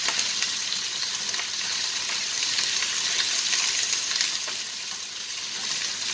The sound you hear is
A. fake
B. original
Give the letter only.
B